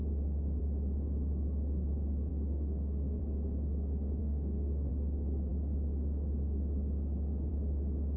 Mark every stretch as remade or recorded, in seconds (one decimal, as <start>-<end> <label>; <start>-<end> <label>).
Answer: 0.0-2.3 recorded; 2.3-3.2 remade; 3.2-4.2 recorded; 4.2-4.9 remade; 4.9-8.2 recorded